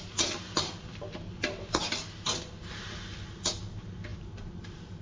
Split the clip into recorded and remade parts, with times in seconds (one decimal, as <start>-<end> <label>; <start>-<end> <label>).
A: 0.0-4.1 recorded; 4.1-5.0 remade